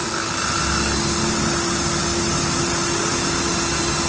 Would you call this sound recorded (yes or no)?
yes